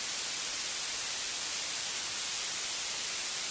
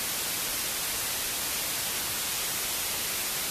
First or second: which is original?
second